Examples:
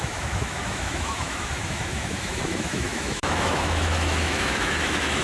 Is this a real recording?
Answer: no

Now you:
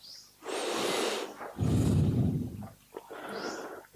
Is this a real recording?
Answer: yes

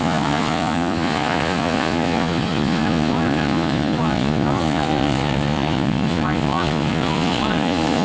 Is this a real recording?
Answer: no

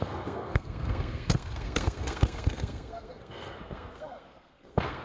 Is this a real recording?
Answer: no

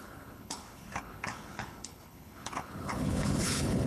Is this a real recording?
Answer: no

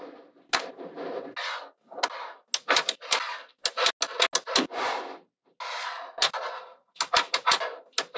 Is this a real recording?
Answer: yes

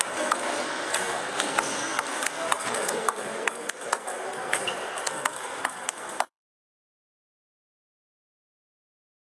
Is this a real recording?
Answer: no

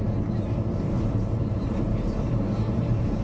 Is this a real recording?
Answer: no